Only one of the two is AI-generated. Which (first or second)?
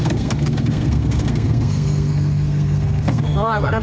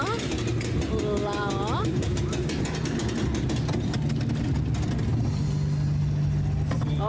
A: first